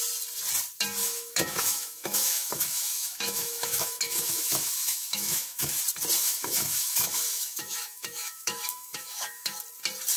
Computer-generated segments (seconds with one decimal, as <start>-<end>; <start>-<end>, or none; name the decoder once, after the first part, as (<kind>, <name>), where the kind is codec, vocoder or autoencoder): 1.0-5.8 (autoencoder, DAC-VAE); 6.2-9.6